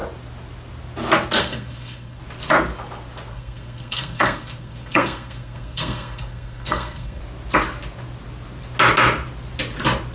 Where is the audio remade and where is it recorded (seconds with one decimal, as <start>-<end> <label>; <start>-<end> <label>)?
0.0-1.4 recorded; 1.4-2.2 remade; 2.2-3.3 recorded; 3.3-7.2 remade; 7.2-10.1 recorded